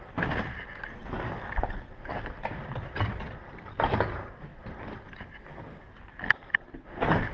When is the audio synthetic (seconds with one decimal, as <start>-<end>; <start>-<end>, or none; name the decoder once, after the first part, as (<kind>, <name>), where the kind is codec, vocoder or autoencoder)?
none